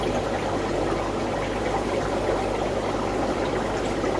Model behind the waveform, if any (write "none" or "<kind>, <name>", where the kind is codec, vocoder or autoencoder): none